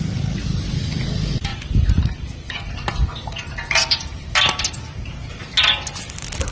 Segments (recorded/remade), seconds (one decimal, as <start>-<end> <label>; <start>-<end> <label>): 0.0-1.5 recorded; 1.5-4.3 remade; 4.3-6.5 recorded